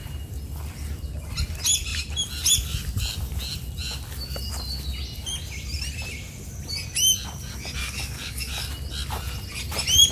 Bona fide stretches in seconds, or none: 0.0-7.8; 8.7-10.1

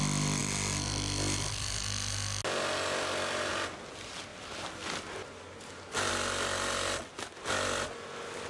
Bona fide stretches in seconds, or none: 0.0-8.5

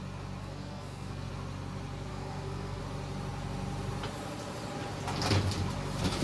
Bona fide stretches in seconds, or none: 0.0-0.4; 1.3-2.1; 2.8-6.2

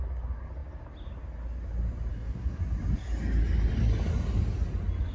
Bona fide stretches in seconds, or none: 0.0-2.1; 2.6-5.1